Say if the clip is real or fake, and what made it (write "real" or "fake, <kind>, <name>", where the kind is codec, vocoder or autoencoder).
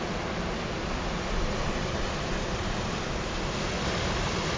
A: real